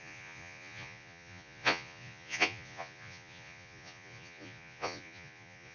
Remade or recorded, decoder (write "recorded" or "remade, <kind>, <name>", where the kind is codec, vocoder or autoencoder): remade, vocoder, Vocos